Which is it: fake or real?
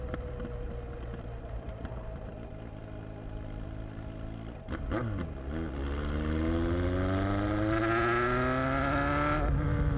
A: real